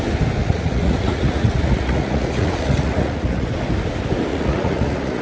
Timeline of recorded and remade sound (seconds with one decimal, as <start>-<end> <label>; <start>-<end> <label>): 0.0-0.4 recorded; 0.4-3.5 remade; 3.5-4.3 recorded; 4.3-5.2 remade